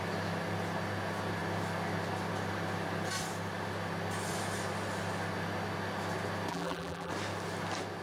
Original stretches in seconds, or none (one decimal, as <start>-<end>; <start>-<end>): 0.0-6.5; 7.1-8.0